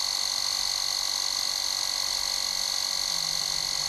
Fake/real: real